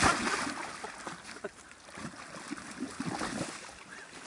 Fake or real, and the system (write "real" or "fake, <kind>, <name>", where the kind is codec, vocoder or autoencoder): real